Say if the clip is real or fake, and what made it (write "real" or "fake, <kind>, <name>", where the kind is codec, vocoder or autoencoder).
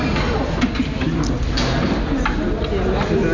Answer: real